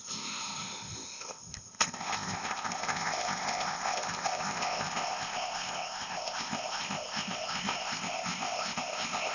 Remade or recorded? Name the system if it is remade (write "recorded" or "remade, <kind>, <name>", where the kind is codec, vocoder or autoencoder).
remade, codec, ZipCodec